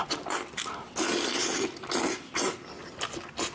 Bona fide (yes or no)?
yes